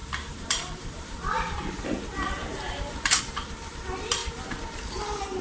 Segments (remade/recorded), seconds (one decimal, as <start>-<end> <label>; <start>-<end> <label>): 0.0-3.2 remade; 3.2-4.2 recorded; 4.2-4.8 remade; 4.8-5.4 recorded